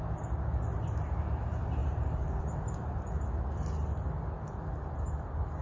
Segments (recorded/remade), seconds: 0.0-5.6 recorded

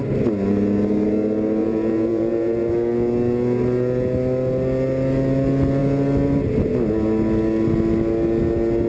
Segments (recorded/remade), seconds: 0.0-1.6 recorded; 1.6-2.7 remade; 2.7-8.9 recorded

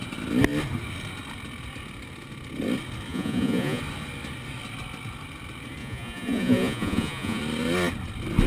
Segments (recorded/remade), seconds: 0.0-3.1 recorded; 3.1-3.8 remade; 3.8-5.8 recorded; 5.8-7.4 remade; 7.4-8.5 recorded